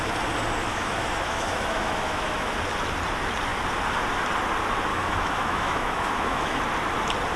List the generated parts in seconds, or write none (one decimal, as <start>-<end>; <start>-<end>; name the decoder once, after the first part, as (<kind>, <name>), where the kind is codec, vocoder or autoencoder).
0.6-2.5 (autoencoder, DAC-VAE); 4.9-6.6